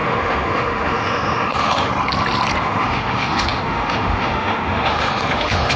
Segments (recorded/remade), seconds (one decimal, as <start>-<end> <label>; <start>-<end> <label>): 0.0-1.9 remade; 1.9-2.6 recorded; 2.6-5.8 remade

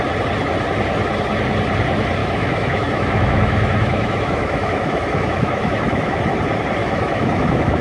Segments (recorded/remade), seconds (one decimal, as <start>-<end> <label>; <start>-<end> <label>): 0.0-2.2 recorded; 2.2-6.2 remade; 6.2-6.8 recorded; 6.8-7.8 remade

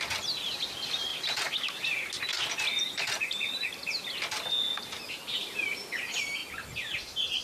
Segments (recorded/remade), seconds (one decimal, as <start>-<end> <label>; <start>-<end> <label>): 0.0-6.4 recorded; 6.4-7.4 remade